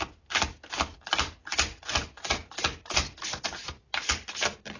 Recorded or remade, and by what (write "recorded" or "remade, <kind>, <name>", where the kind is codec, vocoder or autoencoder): recorded